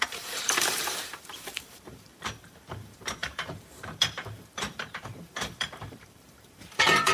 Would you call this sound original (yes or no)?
no